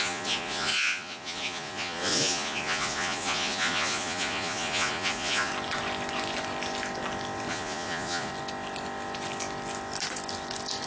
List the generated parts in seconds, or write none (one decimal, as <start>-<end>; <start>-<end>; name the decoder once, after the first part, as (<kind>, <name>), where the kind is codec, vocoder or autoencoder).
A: 0.0-5.5 (vocoder, Vocos); 7.5-8.3

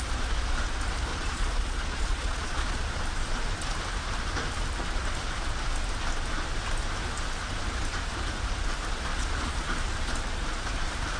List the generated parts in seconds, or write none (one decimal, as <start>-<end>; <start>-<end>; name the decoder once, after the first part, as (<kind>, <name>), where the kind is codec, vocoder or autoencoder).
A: 1.1-3.0 (vocoder, Vocos); 9.1-9.7